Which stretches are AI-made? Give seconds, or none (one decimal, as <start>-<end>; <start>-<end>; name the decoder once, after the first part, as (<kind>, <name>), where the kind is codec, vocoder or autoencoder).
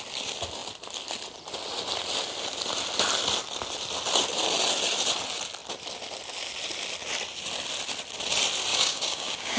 8.7-9.6 (codec, DAC)